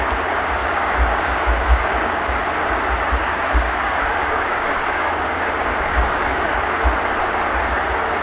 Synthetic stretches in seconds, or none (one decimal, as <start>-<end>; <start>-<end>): 0.6-2.4; 3.2-6.7